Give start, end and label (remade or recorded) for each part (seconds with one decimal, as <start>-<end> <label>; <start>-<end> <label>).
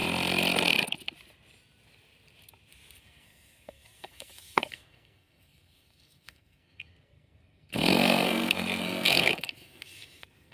0.0-3.0 recorded; 3.0-10.5 remade